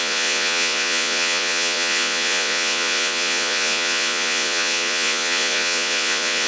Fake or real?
fake